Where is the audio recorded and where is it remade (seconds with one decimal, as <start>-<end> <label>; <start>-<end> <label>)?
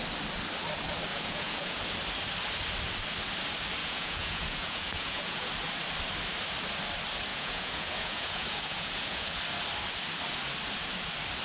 0.0-1.1 recorded; 1.1-1.8 remade; 1.8-3.8 recorded; 3.8-5.5 remade; 5.5-7.3 recorded; 7.3-9.4 remade; 9.4-11.4 recorded